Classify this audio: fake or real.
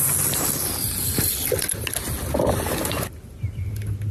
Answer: real